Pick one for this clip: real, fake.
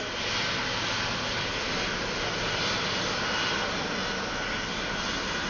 real